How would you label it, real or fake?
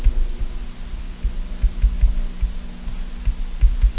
real